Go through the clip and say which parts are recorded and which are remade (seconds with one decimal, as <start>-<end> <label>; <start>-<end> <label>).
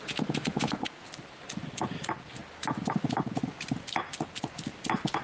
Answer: 0.0-0.5 recorded; 0.5-1.1 remade; 1.1-5.2 recorded